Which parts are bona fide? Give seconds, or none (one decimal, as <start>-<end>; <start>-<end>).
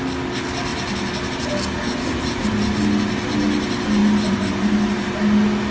0.0-5.7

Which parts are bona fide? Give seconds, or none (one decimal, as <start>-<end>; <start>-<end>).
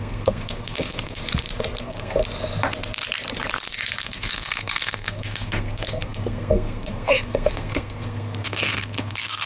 1.2-1.8; 2.2-4.0